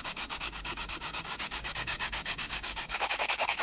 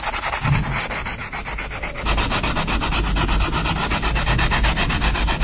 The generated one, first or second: first